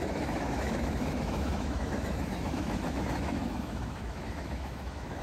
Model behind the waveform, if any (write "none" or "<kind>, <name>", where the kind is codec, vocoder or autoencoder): autoencoder, DAC-VAE